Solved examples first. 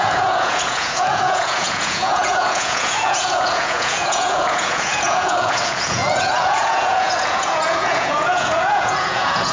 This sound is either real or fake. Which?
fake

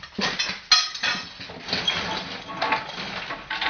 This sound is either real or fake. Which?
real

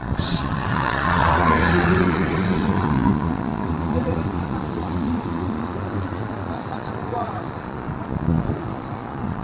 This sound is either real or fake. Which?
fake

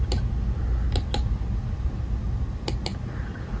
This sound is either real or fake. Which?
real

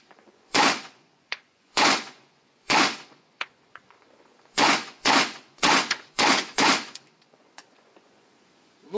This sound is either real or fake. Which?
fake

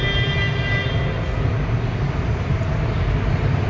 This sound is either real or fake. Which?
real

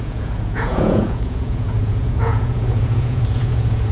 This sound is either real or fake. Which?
fake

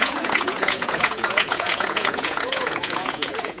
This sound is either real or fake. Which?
fake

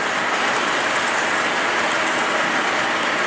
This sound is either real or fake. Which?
real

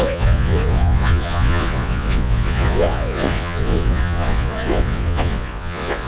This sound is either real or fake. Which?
fake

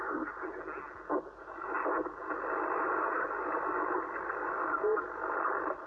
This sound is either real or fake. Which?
real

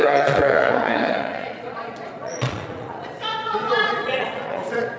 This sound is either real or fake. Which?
fake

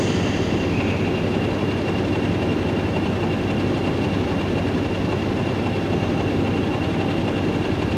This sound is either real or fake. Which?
real